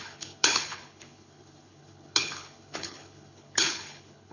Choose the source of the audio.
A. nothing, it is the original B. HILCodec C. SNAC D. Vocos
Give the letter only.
B